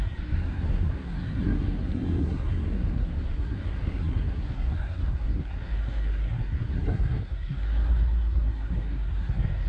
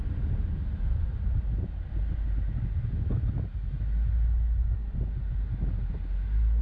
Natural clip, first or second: second